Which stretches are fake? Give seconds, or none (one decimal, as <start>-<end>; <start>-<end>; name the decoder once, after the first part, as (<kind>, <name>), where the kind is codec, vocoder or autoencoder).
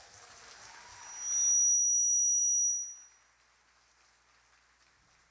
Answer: none